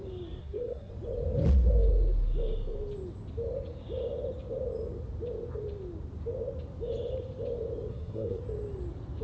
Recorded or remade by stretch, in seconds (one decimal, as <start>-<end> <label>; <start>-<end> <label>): 0.0-0.4 recorded; 0.4-0.9 remade; 0.9-7.9 recorded; 7.9-8.4 remade; 8.4-9.2 recorded